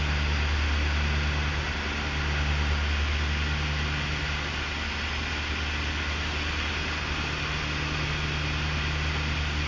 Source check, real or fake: real